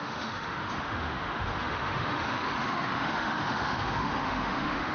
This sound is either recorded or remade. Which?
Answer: remade